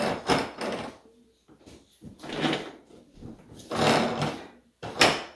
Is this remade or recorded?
recorded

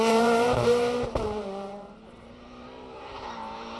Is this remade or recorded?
remade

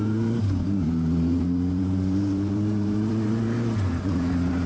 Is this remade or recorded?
remade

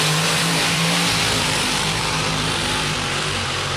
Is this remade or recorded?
remade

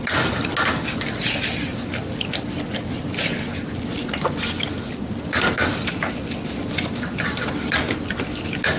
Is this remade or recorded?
recorded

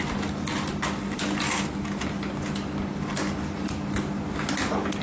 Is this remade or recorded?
recorded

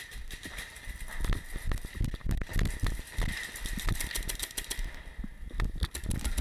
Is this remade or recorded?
recorded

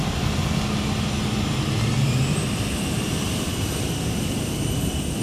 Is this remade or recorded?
recorded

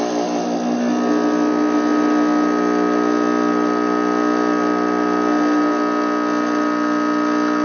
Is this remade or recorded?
recorded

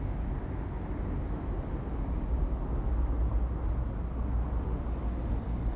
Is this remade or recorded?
recorded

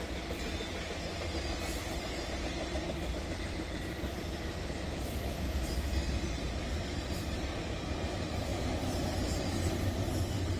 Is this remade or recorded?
recorded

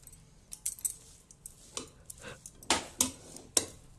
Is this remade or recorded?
recorded